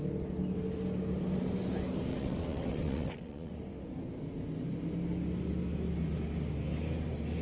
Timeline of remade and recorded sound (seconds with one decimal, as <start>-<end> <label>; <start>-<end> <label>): 0.0-2.1 recorded; 2.1-3.5 remade; 3.5-7.4 recorded